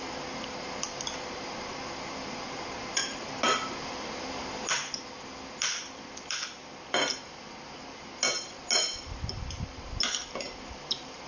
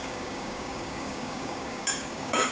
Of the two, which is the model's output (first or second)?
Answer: second